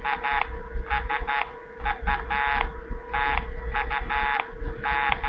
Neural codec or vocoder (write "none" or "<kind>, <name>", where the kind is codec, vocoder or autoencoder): none